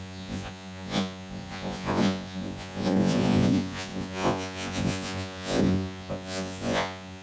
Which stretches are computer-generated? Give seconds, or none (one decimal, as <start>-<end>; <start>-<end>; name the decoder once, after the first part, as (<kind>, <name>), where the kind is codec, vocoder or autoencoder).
0.0-7.2 (vocoder, Vocos)